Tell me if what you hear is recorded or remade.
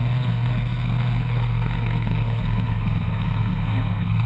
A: remade